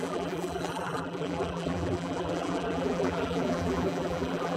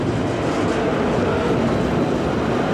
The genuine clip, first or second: second